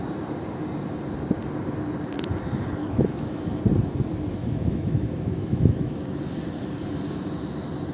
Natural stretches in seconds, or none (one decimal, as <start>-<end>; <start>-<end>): 0.0-2.8; 3.6-4.4; 6.2-7.9